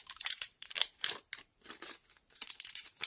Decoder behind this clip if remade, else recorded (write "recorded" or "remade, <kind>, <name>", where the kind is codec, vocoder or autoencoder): remade, vocoder, BigVGAN v2